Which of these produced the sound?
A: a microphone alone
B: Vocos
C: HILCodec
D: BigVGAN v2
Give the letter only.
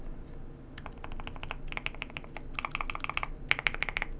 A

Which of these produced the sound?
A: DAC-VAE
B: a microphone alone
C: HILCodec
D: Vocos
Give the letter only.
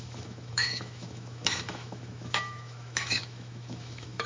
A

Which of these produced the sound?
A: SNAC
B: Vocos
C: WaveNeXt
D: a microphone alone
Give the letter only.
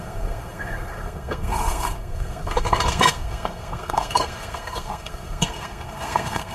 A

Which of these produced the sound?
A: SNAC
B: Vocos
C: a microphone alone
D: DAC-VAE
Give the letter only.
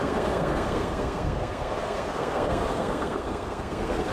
A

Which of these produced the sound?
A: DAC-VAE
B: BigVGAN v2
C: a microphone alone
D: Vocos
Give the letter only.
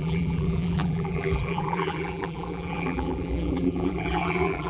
B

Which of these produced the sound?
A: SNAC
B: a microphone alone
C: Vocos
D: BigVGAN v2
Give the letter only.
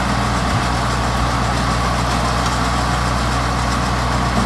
B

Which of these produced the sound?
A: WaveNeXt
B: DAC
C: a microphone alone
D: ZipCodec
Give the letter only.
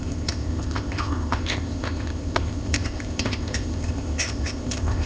D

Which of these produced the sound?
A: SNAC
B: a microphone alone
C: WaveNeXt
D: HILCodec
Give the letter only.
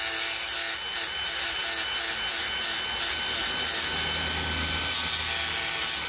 B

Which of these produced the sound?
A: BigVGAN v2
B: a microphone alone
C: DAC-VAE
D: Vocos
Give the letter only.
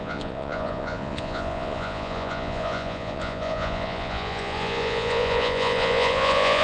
D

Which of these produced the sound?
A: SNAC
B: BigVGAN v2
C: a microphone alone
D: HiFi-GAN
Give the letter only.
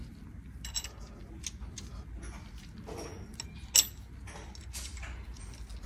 C